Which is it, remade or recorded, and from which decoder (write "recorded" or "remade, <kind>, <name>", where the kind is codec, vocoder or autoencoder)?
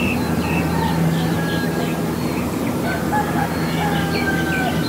recorded